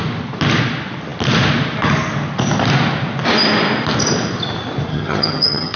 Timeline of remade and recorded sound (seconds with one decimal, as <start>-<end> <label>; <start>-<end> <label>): 0.0-4.9 recorded; 4.9-5.8 remade